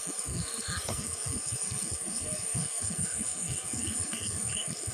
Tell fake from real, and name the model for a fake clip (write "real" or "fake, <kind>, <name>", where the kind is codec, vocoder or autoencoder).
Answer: fake, codec, SNAC